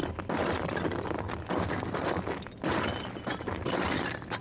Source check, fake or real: real